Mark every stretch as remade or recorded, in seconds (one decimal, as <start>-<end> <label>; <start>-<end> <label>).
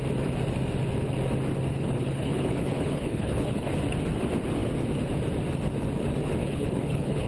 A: 0.0-1.7 recorded; 1.7-3.7 remade; 3.7-6.4 recorded; 6.4-7.3 remade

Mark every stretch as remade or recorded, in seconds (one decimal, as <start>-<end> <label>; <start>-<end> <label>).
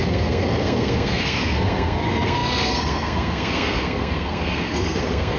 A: 0.0-5.4 remade